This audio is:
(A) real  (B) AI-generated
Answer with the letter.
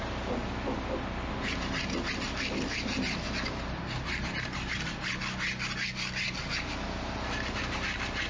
A